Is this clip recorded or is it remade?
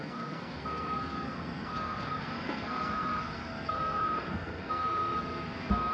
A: remade